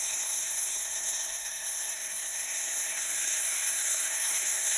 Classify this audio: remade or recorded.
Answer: remade